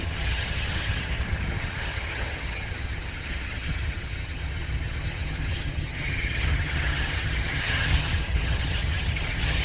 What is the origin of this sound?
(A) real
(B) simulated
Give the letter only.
B